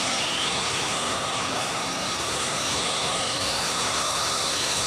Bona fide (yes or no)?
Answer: no